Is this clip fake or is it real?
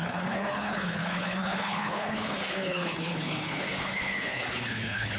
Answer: fake